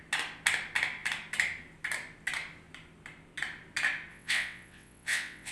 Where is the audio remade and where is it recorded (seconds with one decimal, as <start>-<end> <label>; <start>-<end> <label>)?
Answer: 0.0-4.1 recorded; 4.1-5.5 remade